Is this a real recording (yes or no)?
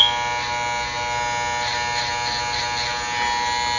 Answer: yes